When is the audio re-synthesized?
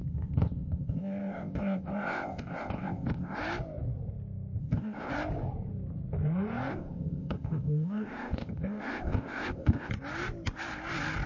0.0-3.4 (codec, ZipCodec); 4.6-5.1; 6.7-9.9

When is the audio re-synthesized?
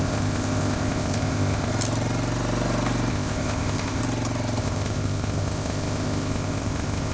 0.0-1.7 (codec, ZipCodec); 3.1-4.0; 4.6-7.1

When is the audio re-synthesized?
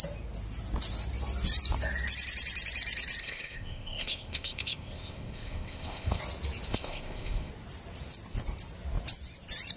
3.2-6.2 (codec, ZipCodec); 6.7-7.5